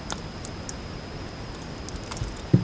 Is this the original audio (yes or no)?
yes